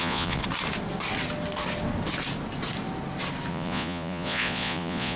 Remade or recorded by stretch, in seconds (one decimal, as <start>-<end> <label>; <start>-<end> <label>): 0.0-0.4 remade; 0.4-3.5 recorded; 3.5-5.2 remade